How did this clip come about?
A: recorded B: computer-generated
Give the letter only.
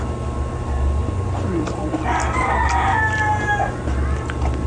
A